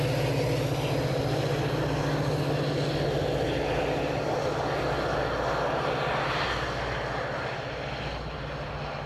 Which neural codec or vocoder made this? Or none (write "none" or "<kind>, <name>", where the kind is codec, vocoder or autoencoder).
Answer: none